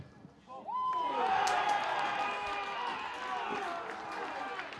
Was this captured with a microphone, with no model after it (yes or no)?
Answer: yes